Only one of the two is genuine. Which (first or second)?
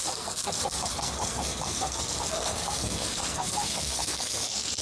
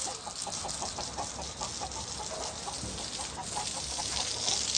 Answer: second